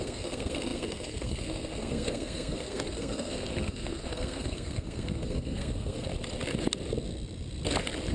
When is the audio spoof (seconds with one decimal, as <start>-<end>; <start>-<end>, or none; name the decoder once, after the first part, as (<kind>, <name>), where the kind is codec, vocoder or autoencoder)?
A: 0.0-6.1 (codec, SNAC)